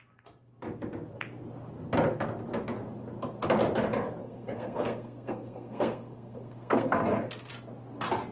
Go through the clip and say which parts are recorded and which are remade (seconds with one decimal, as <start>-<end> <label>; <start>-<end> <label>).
0.0-4.2 recorded; 4.2-7.5 remade; 7.5-8.3 recorded

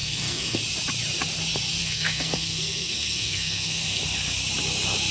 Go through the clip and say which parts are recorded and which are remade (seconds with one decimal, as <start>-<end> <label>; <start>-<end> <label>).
0.0-0.6 remade; 0.6-1.8 recorded; 1.8-4.0 remade; 4.0-5.1 recorded

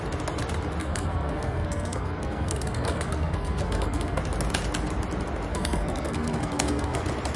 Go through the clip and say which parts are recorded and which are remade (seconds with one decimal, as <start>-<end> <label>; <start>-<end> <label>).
0.0-0.8 recorded; 0.8-4.2 remade; 4.2-5.5 recorded; 5.5-7.0 remade; 7.0-7.4 recorded

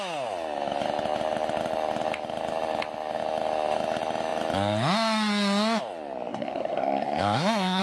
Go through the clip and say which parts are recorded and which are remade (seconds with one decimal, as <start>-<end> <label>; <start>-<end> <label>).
0.0-6.3 recorded; 6.3-7.8 remade

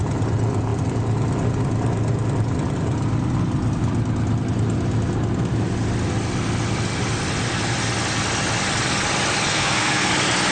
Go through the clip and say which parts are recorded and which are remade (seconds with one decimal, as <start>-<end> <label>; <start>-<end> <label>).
0.0-9.5 recorded; 9.5-10.1 remade; 10.1-10.5 recorded